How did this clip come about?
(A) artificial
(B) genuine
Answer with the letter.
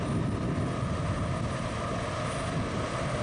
B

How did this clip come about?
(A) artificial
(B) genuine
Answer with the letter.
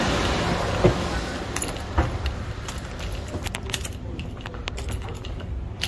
B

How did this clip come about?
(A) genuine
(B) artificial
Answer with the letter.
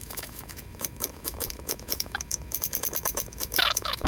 B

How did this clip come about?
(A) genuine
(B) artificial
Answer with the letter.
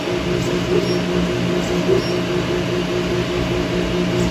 A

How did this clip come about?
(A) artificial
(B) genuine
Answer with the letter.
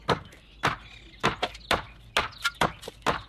B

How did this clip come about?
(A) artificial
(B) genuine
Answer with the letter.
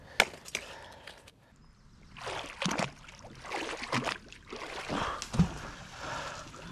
B